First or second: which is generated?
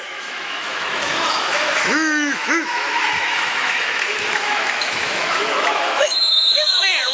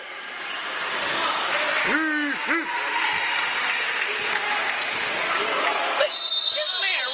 first